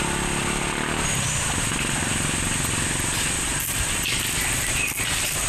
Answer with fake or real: real